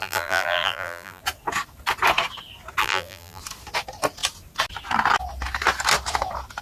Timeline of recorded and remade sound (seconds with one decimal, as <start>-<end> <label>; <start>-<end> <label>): 0.0-1.2 remade; 1.2-2.8 recorded; 2.8-3.4 remade; 3.4-6.6 recorded